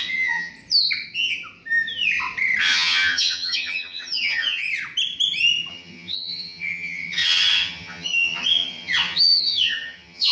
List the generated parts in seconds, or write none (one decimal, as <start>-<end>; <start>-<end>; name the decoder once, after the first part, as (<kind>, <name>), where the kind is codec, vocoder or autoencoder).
0.0-0.5 (vocoder, HiFi-GAN); 2.6-4.6; 5.7-10.3